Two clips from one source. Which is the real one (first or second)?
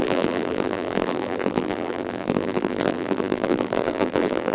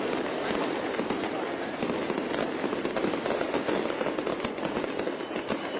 second